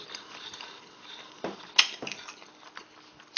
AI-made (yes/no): no